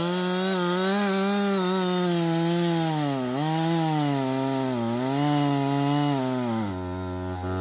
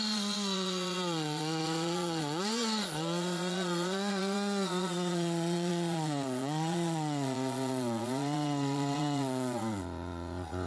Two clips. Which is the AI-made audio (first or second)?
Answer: second